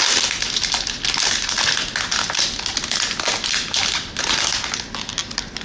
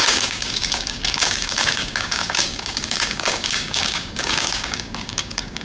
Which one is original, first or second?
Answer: first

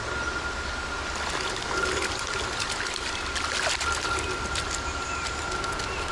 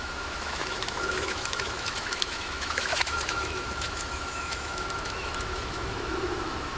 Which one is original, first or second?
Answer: first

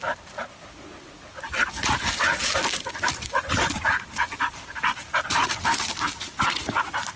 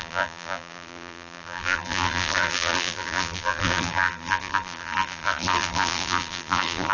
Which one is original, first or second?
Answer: first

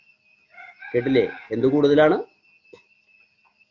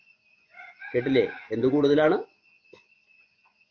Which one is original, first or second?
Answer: first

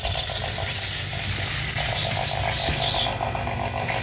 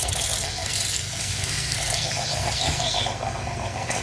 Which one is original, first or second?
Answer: first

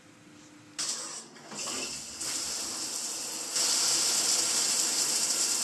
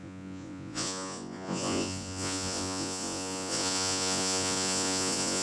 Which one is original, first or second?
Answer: first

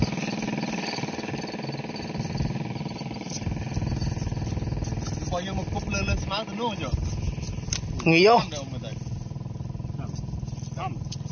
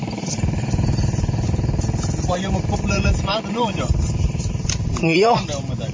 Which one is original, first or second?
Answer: first